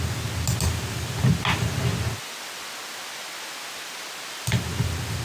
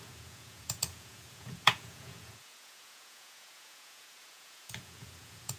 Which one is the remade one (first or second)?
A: second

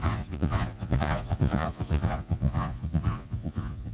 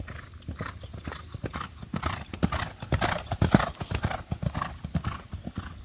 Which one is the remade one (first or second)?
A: first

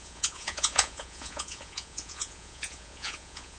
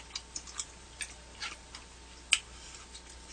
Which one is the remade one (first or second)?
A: first